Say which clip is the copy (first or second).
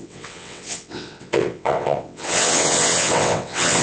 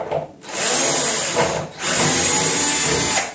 first